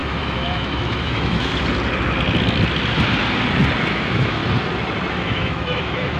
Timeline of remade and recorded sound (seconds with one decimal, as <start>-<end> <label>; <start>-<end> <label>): 0.0-1.5 remade; 1.5-3.8 recorded; 3.8-4.4 remade; 4.4-5.1 recorded; 5.1-6.2 remade